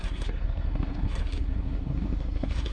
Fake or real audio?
fake